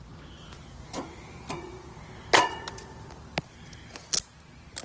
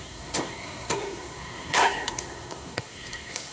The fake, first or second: second